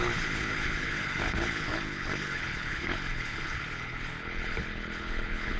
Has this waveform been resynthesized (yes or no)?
yes